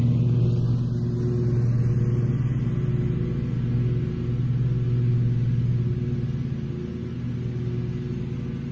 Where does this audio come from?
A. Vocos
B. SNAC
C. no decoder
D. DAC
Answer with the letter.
C